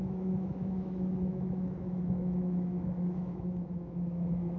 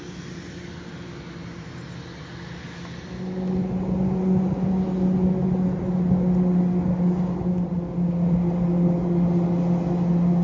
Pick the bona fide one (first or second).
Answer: second